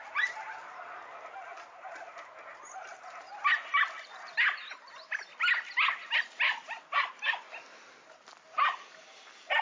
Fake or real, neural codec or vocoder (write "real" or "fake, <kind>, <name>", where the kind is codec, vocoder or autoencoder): real